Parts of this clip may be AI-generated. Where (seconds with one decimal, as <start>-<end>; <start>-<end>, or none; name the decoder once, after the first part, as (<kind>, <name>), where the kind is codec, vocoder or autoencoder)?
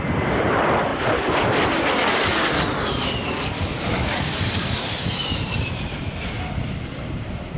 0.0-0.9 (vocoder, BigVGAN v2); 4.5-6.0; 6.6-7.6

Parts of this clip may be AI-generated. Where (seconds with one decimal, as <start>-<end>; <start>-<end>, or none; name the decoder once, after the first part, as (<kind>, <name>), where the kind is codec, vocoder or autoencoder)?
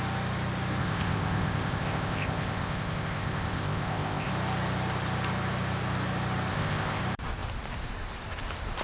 0.8-4.3 (codec, ZipCodec); 6.5-7.0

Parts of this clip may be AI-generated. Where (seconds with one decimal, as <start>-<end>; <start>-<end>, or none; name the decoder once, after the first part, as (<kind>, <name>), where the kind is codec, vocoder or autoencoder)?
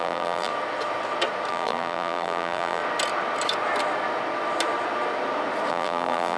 0.0-0.5 (vocoder, BigVGAN v2); 1.5-2.8; 5.7-6.4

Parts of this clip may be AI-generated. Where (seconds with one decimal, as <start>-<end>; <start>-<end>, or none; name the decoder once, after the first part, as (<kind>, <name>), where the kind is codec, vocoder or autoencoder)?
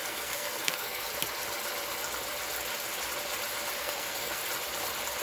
0.0-1.1 (codec, SNAC); 3.8-4.4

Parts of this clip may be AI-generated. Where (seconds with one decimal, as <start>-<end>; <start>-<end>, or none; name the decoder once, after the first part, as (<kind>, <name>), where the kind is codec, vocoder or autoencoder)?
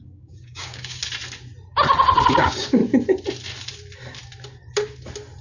0.0-1.0 (codec, DAC); 2.3-2.8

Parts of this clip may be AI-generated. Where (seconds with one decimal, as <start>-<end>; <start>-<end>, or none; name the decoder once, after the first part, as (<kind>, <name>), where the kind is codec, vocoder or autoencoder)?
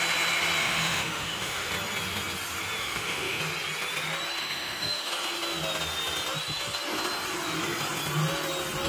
0.6-1.7 (autoencoder, DAC-VAE); 2.8-3.4; 4.4-5.1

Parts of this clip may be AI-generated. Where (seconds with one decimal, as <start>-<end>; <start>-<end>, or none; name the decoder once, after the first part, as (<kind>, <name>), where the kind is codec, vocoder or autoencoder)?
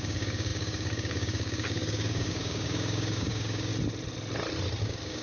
0.0-3.7 (codec, DAC); 4.8-5.2